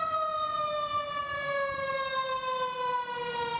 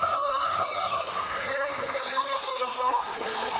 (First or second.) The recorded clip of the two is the first